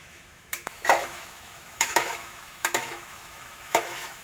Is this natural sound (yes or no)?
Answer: no